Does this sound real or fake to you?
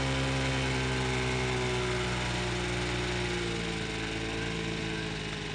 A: real